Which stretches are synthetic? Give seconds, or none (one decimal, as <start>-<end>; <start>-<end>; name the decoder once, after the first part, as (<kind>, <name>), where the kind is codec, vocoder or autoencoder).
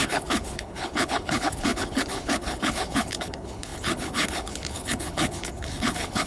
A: 0.0-6.3 (codec, HILCodec)